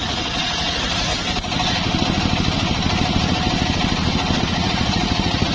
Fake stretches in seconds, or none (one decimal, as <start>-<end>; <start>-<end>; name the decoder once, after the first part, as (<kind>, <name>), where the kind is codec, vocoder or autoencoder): 0.0-1.1 (vocoder, Vocos); 4.4-5.5